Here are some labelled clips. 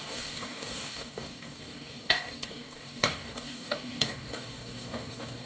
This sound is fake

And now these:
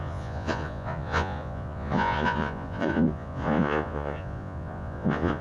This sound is fake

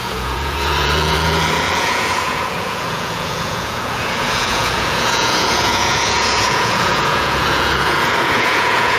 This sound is fake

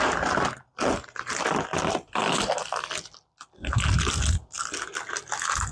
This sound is real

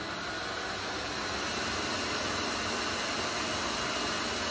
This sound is real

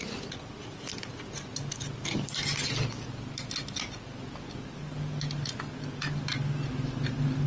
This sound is real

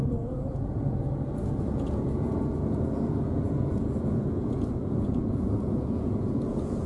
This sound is fake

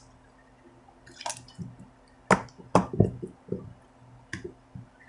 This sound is real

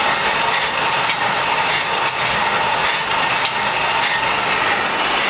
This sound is real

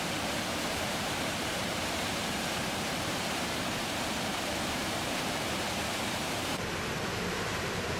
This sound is fake